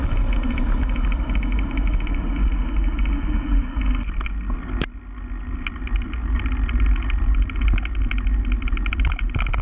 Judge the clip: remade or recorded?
recorded